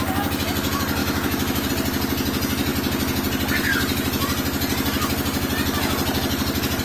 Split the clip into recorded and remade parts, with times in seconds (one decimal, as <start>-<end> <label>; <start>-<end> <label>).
0.0-1.0 recorded; 1.0-1.7 remade; 1.7-6.8 recorded